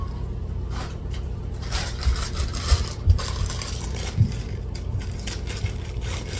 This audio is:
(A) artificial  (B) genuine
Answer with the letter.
A